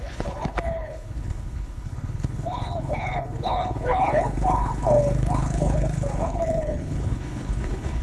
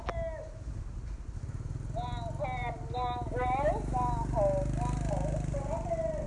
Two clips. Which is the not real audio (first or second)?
first